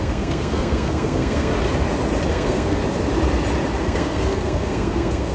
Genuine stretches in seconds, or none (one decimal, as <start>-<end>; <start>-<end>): 1.5-2.3; 2.8-3.8